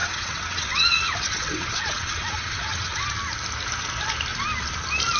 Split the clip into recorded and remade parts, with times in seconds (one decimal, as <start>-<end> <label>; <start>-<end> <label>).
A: 0.0-3.1 remade; 3.1-5.2 recorded